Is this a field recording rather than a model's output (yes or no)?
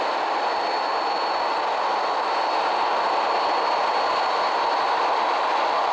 yes